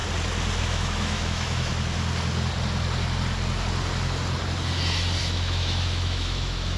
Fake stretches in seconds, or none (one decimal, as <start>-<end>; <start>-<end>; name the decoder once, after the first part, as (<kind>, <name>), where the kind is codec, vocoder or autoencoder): 0.6-1.7 (autoencoder, DAC-VAE); 5.2-6.8